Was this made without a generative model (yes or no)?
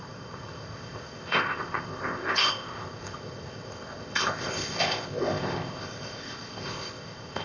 no